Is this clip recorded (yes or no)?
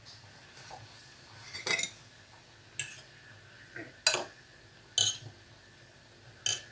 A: yes